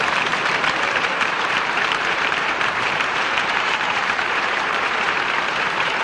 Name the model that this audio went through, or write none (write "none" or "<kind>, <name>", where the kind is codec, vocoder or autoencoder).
vocoder, BigVGAN v2